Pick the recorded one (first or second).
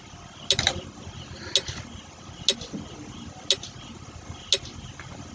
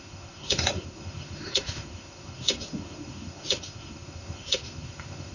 first